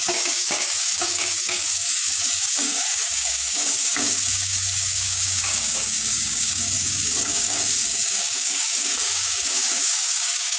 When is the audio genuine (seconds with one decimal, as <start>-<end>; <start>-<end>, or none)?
none